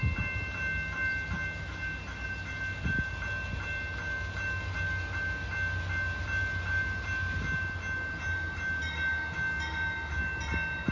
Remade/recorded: recorded